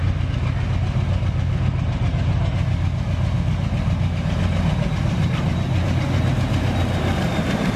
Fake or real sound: real